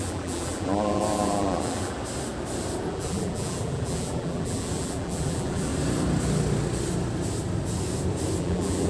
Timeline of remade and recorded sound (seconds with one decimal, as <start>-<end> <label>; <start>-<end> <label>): 0.0-2.0 remade; 2.0-2.9 recorded; 2.9-5.7 remade; 5.7-8.4 recorded; 8.4-8.9 remade